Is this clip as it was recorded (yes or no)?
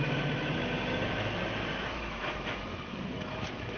no